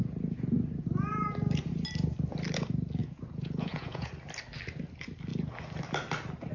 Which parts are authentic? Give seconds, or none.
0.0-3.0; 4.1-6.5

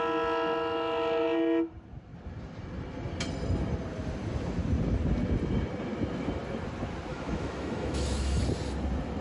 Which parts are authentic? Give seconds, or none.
0.0-7.1; 8.4-9.2